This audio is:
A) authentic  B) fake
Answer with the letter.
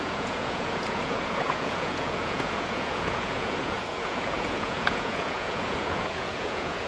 B